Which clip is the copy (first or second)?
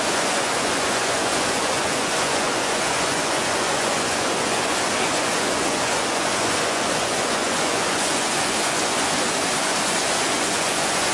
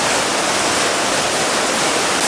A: first